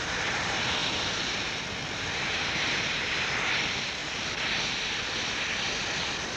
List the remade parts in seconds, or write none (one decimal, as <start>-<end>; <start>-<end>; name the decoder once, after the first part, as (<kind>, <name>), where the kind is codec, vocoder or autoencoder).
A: 0.0-4.0 (vocoder, BigVGAN v2); 4.7-6.4